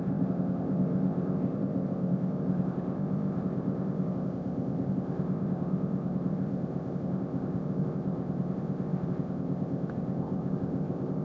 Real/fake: fake